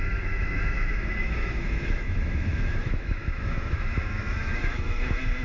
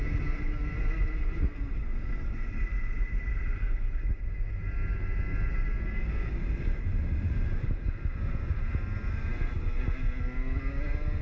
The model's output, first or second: first